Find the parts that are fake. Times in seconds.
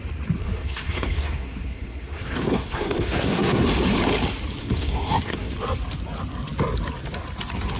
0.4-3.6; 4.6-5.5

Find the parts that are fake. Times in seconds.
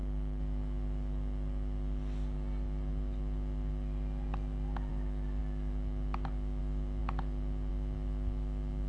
none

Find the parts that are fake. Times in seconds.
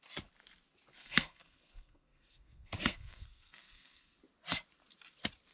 0.9-4.2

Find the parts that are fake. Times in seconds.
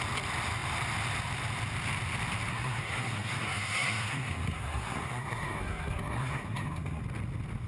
2.5-7.0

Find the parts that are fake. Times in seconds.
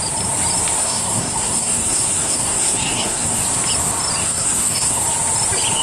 0.8-3.4; 4.2-5.0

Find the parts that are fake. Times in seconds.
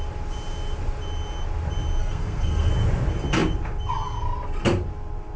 2.0-2.7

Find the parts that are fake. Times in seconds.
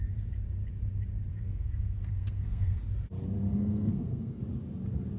1.3-2.8; 3.6-4.4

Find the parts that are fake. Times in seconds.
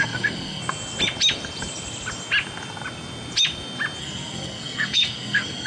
0.0-0.6; 4.0-5.7